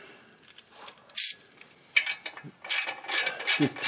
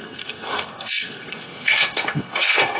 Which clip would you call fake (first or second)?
second